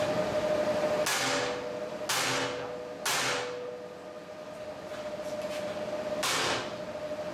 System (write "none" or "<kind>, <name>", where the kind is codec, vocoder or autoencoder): none